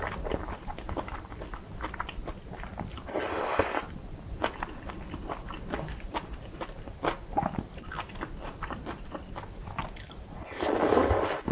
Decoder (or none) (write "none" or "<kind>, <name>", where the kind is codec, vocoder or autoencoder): none